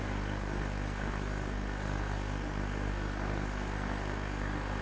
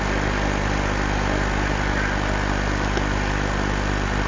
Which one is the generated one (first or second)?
first